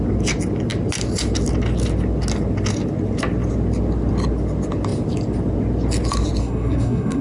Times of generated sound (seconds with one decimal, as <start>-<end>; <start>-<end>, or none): 6.4-7.2

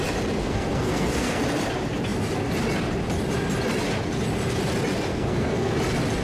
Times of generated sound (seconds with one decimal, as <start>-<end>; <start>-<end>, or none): 0.4-1.4; 5.1-5.7

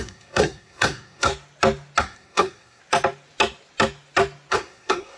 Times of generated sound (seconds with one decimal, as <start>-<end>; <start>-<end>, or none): 0.0-1.3; 2.0-2.8; 4.5-5.2